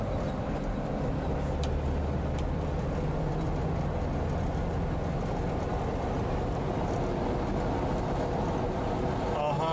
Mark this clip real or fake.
real